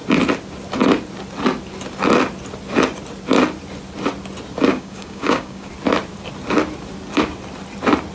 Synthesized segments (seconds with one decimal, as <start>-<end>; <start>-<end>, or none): 4.7-5.7